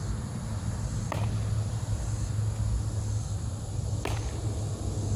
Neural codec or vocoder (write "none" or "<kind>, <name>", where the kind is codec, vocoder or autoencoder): none